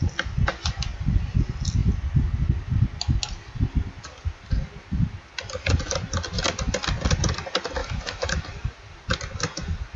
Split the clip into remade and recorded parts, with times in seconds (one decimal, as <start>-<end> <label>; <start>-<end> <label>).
0.0-7.8 recorded; 7.8-8.4 remade; 8.4-10.0 recorded